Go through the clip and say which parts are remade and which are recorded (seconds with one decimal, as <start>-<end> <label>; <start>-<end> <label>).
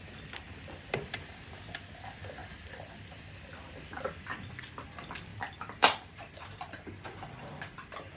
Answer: 0.0-5.3 recorded; 5.3-6.7 remade; 6.7-8.2 recorded